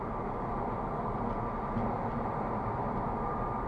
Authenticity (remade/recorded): recorded